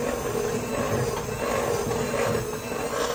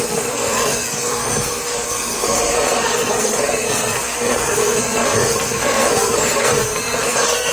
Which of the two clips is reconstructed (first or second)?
second